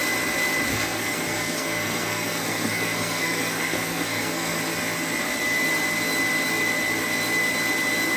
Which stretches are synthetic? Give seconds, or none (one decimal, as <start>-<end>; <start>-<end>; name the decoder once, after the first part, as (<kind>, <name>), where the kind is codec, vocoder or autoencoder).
0.7-4.6 (codec, SNAC)